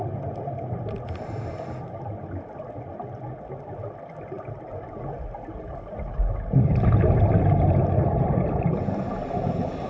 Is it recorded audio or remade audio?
recorded